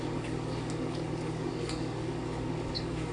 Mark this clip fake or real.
fake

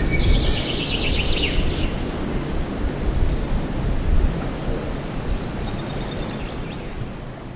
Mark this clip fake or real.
real